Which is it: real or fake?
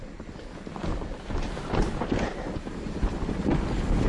real